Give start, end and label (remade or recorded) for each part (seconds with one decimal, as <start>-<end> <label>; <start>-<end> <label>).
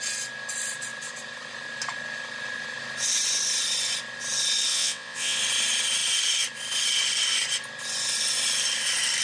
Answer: 0.0-4.7 recorded; 4.7-5.4 remade; 5.4-9.2 recorded